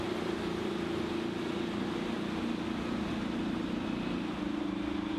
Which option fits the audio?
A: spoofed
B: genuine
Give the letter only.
B